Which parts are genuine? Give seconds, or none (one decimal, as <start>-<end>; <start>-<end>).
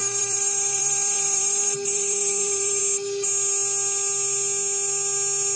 2.8-5.6